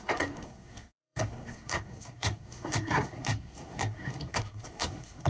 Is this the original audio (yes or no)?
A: no